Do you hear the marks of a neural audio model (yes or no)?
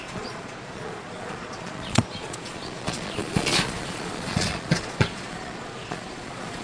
yes